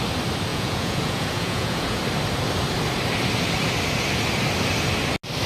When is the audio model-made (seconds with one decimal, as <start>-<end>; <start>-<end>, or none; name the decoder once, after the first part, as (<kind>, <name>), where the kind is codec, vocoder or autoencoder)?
0.5-2.0 (vocoder, Vocos)